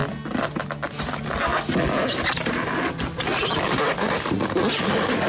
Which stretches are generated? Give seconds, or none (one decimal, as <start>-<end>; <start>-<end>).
none